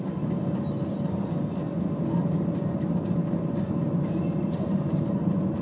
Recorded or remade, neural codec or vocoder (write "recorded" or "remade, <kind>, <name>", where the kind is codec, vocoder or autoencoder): recorded